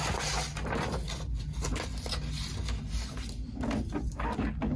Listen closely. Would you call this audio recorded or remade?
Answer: recorded